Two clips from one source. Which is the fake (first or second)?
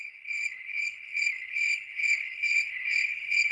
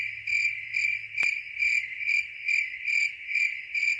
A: first